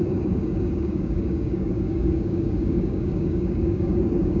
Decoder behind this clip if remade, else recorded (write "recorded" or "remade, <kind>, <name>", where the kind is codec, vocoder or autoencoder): remade, codec, DAC